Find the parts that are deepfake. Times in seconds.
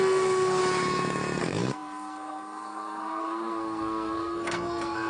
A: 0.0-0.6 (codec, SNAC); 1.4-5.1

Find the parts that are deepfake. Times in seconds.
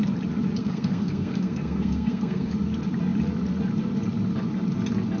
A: 0.6-2.5 (codec, SNAC)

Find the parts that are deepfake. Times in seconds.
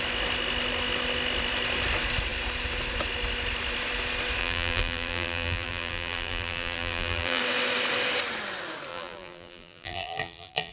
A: 4.4-7.4 (vocoder, BigVGAN v2); 8.9-10.7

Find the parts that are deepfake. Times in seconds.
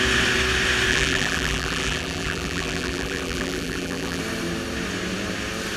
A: 0.9-4.2 (vocoder, BigVGAN v2)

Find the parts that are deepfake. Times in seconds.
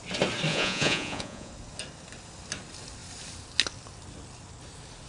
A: 0.5-1.5 (vocoder, Vocos)